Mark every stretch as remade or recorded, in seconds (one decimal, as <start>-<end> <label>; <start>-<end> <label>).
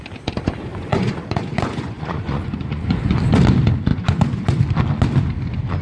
0.0-0.7 recorded; 0.7-3.2 remade; 3.2-3.9 recorded; 3.9-4.6 remade; 4.6-5.8 recorded